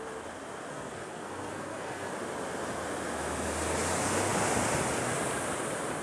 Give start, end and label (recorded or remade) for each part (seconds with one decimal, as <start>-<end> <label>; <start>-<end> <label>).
0.0-0.7 recorded; 0.7-2.1 remade; 2.1-6.0 recorded